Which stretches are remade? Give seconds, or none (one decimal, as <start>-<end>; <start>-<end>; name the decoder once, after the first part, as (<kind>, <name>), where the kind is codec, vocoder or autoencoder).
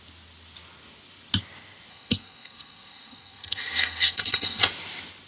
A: 1.9-4.6 (codec, SNAC)